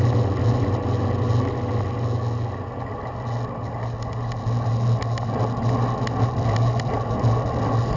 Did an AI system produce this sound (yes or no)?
no